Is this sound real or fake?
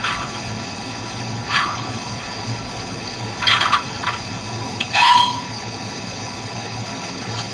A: fake